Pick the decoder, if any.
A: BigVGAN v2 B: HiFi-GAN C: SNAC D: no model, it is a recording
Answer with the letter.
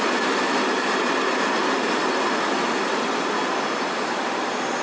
D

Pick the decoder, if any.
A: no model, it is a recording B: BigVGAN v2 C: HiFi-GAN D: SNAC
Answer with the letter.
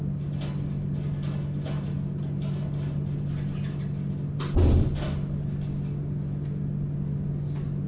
A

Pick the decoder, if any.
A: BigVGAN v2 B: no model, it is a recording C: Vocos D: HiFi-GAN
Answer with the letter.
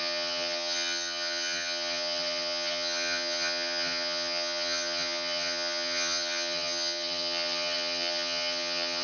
D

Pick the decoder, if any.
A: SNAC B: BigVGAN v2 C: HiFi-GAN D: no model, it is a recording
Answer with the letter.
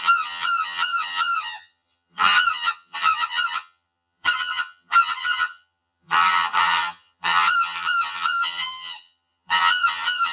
C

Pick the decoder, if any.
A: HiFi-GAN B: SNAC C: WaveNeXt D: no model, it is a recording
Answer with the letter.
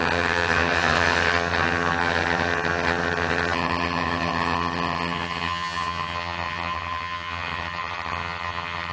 A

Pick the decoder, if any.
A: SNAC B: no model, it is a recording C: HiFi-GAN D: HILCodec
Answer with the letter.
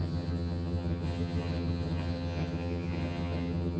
C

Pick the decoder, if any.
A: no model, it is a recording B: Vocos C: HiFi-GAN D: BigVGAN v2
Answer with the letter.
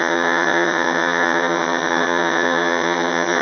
C